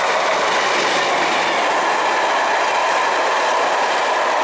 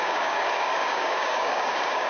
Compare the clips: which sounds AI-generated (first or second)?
second